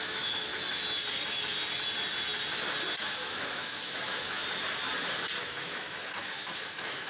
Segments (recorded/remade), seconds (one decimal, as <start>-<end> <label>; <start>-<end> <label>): 0.0-0.5 remade; 0.5-3.0 recorded; 3.0-4.4 remade; 4.4-5.4 recorded; 5.4-7.1 remade